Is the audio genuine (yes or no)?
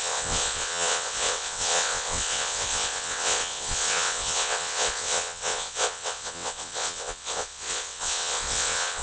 no